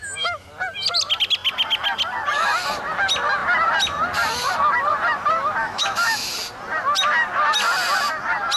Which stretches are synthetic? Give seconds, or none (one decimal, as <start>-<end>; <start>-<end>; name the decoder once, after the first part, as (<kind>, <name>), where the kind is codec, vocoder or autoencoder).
0.0-0.5 (autoencoder, DAC-VAE); 5.6-6.3